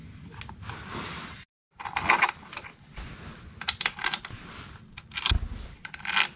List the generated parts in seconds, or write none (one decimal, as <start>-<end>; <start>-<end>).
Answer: none